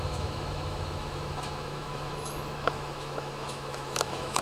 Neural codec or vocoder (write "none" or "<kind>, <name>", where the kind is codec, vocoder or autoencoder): autoencoder, DAC-VAE